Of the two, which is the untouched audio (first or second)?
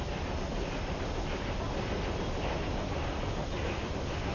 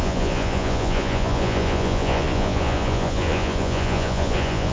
first